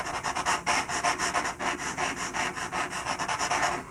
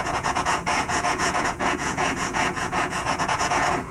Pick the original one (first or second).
first